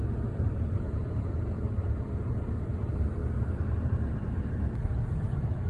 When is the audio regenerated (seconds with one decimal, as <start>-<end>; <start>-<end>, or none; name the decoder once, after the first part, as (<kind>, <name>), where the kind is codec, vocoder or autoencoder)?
none